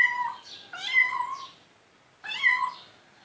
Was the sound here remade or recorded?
recorded